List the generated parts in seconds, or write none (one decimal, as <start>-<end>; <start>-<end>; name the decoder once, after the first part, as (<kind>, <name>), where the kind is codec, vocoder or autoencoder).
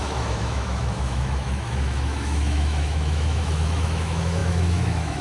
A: 0.0-5.2 (autoencoder, DAC-VAE)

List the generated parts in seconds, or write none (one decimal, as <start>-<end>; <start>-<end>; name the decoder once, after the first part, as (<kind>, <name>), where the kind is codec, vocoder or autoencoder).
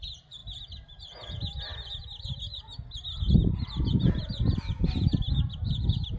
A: 0.0-1.7 (vocoder, BigVGAN v2); 4.8-6.2